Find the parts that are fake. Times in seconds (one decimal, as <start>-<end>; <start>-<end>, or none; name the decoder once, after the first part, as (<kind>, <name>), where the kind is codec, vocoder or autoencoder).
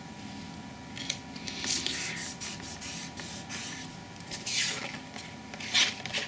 none